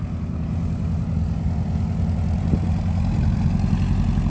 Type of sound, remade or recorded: recorded